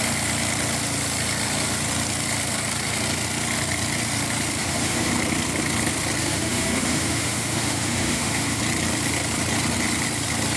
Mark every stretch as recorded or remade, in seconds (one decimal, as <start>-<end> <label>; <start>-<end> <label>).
0.0-4.6 recorded; 4.6-5.1 remade; 5.1-6.2 recorded; 6.2-8.6 remade; 8.6-10.6 recorded

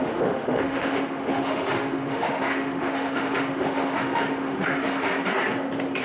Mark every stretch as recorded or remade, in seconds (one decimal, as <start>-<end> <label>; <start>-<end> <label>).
0.0-5.1 remade; 5.1-6.0 recorded

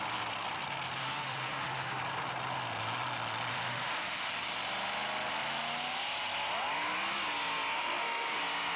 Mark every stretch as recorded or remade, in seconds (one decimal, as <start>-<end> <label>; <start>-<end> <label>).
0.0-1.0 recorded; 1.0-2.0 remade; 2.0-3.5 recorded; 3.5-4.3 remade; 4.3-7.7 recorded; 7.7-8.4 remade; 8.4-8.8 recorded

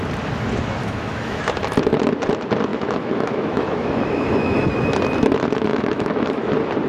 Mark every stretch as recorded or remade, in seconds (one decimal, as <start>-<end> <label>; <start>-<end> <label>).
0.0-0.8 recorded; 0.8-1.4 remade; 1.4-2.7 recorded; 2.7-4.7 remade; 4.7-5.7 recorded; 5.7-6.5 remade; 6.5-6.9 recorded

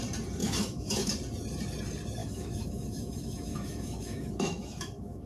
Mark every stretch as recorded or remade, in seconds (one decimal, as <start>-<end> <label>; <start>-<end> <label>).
0.0-0.4 recorded; 0.4-1.1 remade; 1.1-2.2 recorded; 2.2-5.3 remade

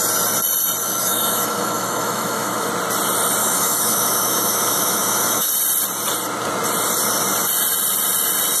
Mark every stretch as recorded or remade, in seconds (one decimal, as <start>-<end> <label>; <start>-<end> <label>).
0.0-0.8 recorded; 0.8-2.7 remade; 2.7-3.4 recorded; 3.4-5.5 remade; 5.5-8.6 recorded

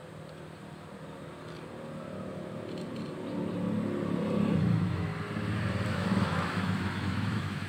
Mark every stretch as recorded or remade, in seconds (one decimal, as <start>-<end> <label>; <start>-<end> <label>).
0.0-4.6 recorded; 4.6-5.1 remade; 5.1-5.9 recorded; 5.9-7.7 remade

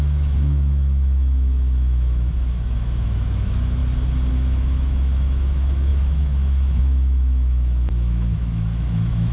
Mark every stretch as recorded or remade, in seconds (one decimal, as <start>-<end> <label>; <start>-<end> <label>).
0.0-3.8 remade; 3.8-4.3 recorded; 4.3-9.3 remade